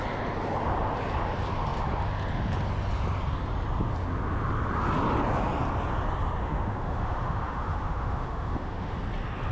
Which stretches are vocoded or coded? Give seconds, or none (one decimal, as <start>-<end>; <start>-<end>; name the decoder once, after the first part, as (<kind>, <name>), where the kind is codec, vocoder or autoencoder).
6.4-9.0 (autoencoder, DAC-VAE)